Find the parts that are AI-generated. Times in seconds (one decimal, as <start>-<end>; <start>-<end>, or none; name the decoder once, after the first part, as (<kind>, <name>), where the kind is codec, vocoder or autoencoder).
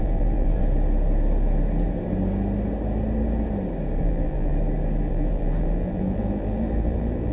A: 0.0-0.6 (vocoder, BigVGAN v2); 4.0-4.5; 5.1-7.3